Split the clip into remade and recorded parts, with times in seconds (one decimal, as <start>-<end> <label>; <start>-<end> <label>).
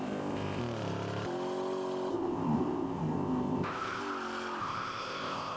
0.0-0.6 remade; 0.6-2.1 recorded; 2.1-4.0 remade; 4.0-4.6 recorded; 4.6-5.6 remade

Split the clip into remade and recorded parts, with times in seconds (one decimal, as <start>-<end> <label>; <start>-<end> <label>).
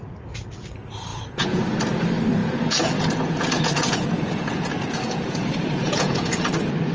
0.0-1.1 recorded; 1.1-1.6 remade; 1.6-2.4 recorded; 2.4-6.5 remade; 6.5-6.9 recorded